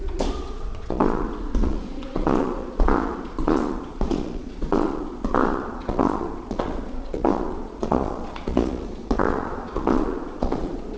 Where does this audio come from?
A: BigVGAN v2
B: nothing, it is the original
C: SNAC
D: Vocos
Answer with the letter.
D